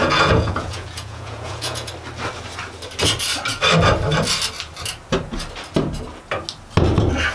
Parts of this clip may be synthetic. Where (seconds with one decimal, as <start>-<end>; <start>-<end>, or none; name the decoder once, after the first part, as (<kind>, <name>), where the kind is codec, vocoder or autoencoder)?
0.0-1.9 (vocoder, Vocos)